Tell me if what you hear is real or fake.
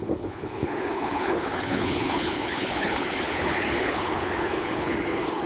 fake